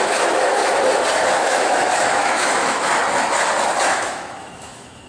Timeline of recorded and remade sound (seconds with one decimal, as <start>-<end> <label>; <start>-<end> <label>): 0.0-0.6 remade; 0.6-1.2 recorded; 1.2-3.0 remade; 3.0-3.9 recorded; 3.9-5.1 remade